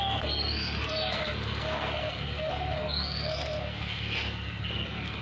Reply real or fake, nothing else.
fake